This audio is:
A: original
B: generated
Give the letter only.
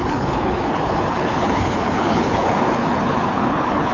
B